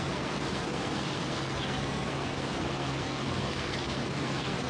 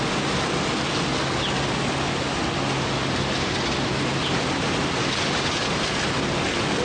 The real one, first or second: second